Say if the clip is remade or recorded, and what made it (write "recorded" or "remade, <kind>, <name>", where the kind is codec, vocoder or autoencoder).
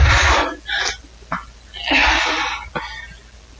recorded